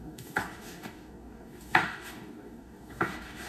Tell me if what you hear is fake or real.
fake